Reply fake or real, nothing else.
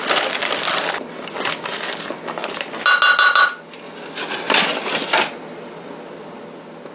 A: real